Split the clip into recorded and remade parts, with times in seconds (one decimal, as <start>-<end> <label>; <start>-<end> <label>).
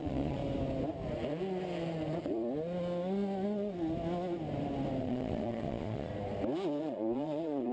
0.0-0.4 remade; 0.4-5.0 recorded; 5.0-6.1 remade; 6.1-6.8 recorded; 6.8-7.7 remade